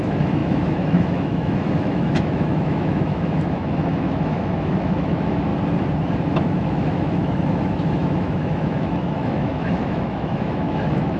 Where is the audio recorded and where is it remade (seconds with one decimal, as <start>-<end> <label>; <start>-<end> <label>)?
0.0-5.5 remade; 5.5-6.3 recorded; 6.3-11.2 remade